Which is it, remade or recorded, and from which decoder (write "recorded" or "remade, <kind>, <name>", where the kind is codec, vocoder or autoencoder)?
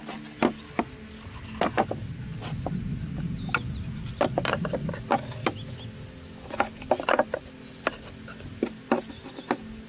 recorded